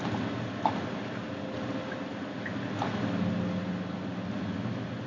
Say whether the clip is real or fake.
real